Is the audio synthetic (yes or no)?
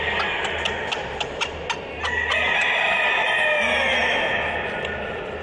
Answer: no